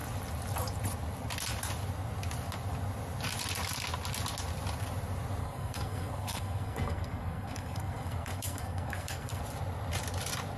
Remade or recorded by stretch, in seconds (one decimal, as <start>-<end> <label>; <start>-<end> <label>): 0.0-5.4 recorded; 5.4-9.4 remade; 9.4-10.6 recorded